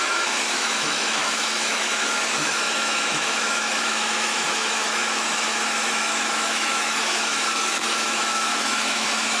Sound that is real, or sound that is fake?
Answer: fake